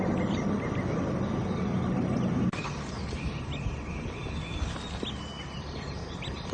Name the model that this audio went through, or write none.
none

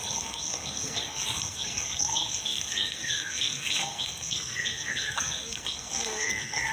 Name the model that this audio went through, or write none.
codec, SNAC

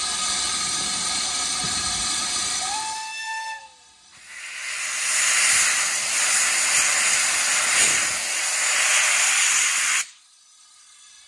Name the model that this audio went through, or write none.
none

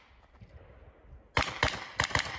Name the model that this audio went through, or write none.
none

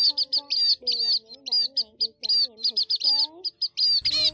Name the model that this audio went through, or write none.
none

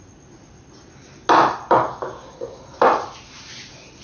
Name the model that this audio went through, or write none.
none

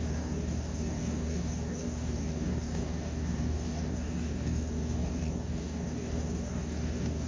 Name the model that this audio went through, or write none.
codec, DAC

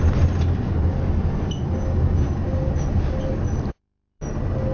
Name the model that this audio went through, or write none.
none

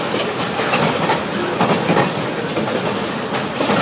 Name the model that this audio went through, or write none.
none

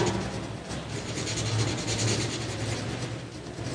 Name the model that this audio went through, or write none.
none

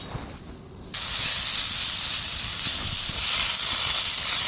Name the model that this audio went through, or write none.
none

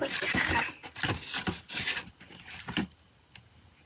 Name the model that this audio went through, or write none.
none